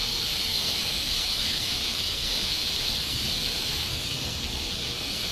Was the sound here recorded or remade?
remade